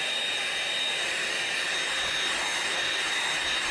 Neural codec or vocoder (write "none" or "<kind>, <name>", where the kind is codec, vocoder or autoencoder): none